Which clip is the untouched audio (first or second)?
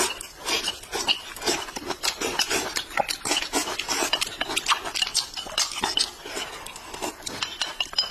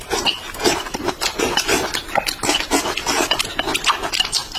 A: second